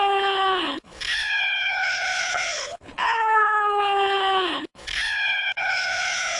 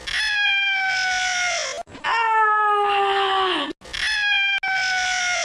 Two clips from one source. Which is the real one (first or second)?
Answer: second